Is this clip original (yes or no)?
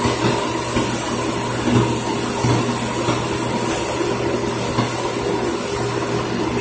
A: yes